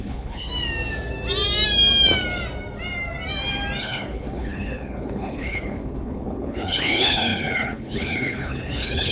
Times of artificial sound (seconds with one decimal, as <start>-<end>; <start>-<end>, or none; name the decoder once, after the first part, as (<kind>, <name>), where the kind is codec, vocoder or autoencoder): 0.0-0.5 (codec, HILCodec); 3.8-9.1